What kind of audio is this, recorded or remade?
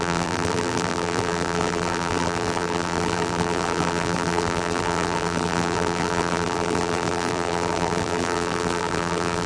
remade